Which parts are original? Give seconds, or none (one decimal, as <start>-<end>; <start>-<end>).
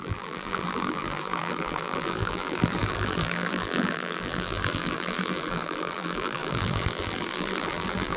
none